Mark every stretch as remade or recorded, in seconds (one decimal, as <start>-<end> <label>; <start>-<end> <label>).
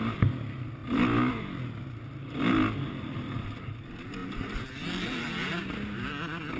0.0-6.6 recorded